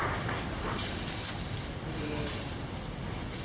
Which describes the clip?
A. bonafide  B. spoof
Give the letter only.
B